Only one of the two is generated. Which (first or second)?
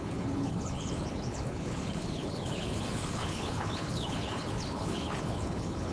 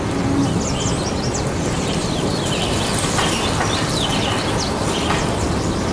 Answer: first